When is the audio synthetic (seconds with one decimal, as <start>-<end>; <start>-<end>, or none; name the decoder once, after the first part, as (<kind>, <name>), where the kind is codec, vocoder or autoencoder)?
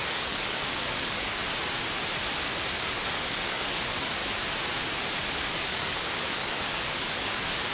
0.0-1.4 (codec, DAC); 2.7-4.2; 5.3-7.7